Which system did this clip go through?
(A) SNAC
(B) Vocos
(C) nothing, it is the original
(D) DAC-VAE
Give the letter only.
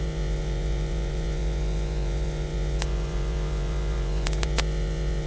B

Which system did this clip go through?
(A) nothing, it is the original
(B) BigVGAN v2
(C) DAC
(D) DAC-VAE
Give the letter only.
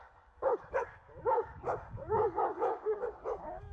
C